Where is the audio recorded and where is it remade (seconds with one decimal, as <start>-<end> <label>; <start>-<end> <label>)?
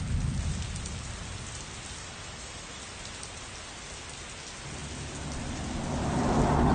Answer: 0.0-2.0 recorded; 2.0-2.8 remade; 2.8-6.7 recorded